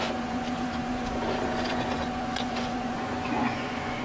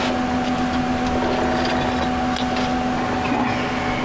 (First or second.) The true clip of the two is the second